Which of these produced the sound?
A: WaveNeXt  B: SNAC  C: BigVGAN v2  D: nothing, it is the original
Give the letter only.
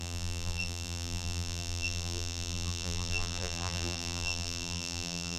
C